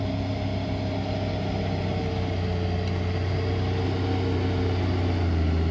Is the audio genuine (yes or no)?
yes